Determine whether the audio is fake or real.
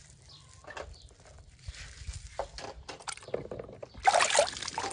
real